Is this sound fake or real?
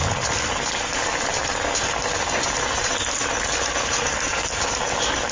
real